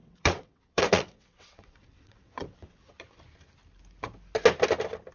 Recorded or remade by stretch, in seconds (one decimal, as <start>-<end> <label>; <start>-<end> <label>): 0.0-3.1 remade; 3.1-5.1 recorded